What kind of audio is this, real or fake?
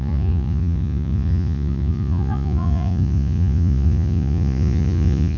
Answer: fake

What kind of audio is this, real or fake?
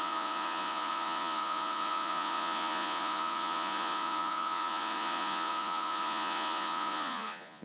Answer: fake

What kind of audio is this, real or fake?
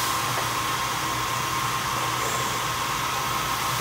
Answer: real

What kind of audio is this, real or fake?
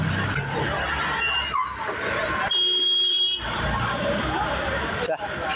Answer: real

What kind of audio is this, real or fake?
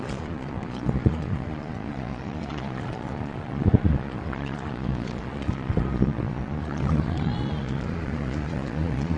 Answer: fake